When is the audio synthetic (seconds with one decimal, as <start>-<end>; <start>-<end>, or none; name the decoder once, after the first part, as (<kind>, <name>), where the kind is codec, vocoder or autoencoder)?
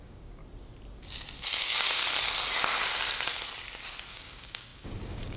0.0-0.4 (codec, DAC); 1.6-2.0; 4.1-5.4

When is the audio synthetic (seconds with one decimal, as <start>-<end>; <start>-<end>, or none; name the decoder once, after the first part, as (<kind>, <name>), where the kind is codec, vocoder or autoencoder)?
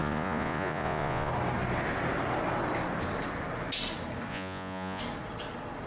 0.0-1.3 (vocoder, Vocos); 4.3-5.0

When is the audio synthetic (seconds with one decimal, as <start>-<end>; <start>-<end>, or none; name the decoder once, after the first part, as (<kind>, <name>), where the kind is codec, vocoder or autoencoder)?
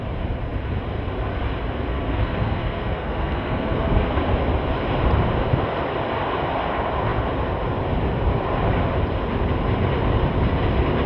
1.9-4.2 (codec, SNAC)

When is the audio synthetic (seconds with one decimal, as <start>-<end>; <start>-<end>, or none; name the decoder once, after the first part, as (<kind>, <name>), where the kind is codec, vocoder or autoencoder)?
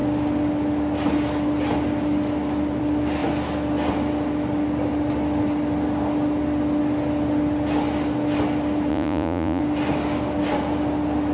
8.9-9.6 (vocoder, Vocos)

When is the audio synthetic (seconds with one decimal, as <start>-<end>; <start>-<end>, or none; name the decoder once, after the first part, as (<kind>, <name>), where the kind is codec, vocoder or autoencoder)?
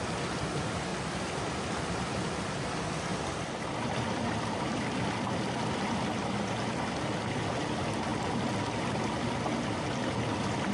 0.9-2.3 (vocoder, BigVGAN v2); 3.1-5.9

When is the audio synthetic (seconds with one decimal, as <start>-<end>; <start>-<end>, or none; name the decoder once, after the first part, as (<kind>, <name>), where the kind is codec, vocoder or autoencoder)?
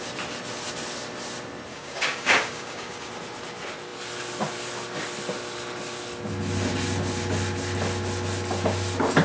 1.7-3.1 (codec, DAC)